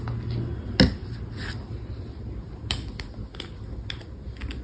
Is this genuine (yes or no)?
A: yes